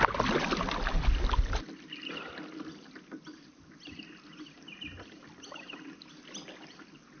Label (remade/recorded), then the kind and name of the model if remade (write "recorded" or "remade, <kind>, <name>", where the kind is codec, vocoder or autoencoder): recorded